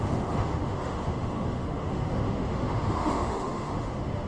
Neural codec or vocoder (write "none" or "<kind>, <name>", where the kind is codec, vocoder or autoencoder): autoencoder, DAC-VAE